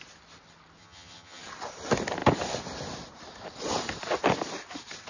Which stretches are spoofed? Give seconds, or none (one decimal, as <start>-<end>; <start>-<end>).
0.8-1.4